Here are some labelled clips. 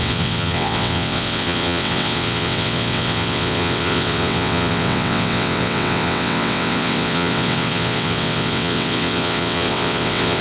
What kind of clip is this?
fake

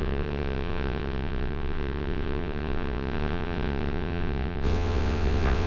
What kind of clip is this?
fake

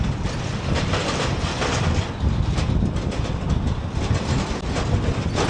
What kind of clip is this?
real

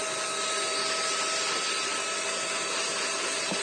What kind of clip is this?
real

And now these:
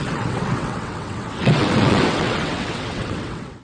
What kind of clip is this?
fake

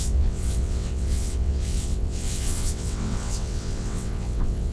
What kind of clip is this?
fake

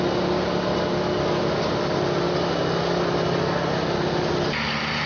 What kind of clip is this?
real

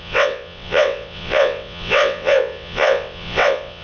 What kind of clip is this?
fake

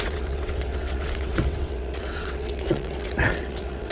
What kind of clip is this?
fake